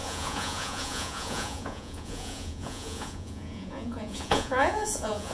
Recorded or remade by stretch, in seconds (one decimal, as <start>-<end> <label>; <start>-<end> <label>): 0.0-5.3 remade